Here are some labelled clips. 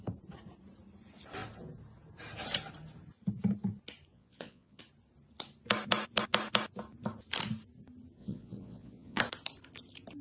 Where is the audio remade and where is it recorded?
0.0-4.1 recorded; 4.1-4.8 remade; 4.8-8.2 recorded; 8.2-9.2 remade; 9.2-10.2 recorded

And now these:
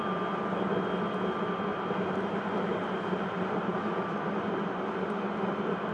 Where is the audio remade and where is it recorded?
0.0-1.7 recorded; 1.7-5.2 remade; 5.2-5.9 recorded

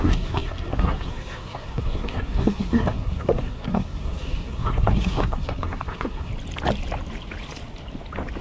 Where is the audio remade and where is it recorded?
0.0-6.3 remade; 6.3-8.4 recorded

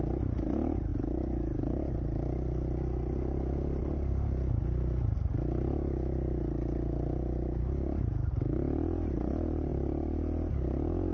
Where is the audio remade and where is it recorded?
0.0-11.1 recorded

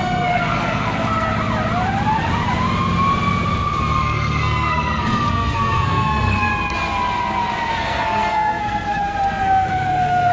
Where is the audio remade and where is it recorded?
0.0-1.3 remade; 1.3-4.0 recorded; 4.0-6.5 remade; 6.5-7.7 recorded; 7.7-10.3 remade